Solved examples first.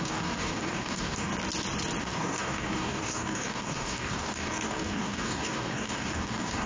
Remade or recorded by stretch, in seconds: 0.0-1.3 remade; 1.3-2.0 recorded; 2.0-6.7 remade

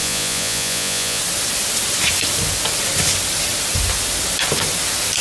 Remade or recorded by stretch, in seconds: 0.0-1.2 remade; 1.2-5.2 recorded

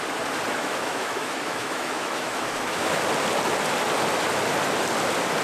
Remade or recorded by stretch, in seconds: 0.0-0.6 recorded; 0.6-3.0 remade; 3.0-5.4 recorded

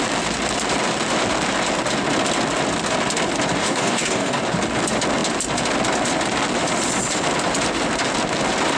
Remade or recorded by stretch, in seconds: 0.0-3.6 recorded; 3.6-4.4 remade; 4.4-8.8 recorded